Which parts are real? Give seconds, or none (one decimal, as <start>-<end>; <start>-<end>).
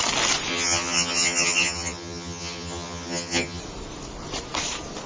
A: 0.0-0.5; 3.6-5.1